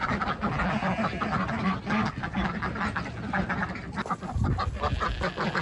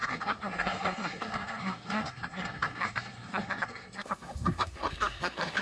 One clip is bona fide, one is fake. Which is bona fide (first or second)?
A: first